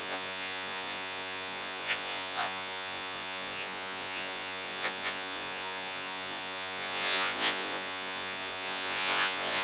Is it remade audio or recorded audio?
remade